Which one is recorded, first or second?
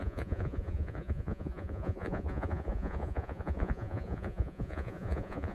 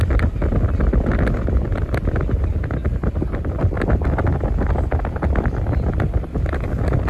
second